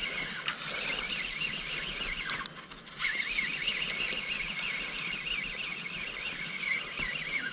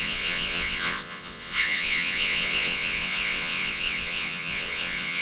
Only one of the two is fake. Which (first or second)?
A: second